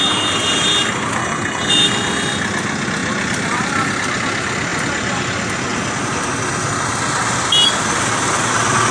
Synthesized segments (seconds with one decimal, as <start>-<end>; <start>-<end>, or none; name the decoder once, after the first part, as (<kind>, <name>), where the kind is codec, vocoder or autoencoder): 1.2-1.7 (codec, HILCodec)